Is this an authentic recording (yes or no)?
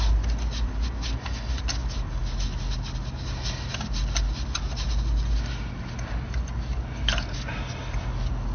yes